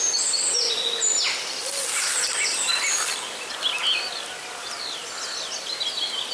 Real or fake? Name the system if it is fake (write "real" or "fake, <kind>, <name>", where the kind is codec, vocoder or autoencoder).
real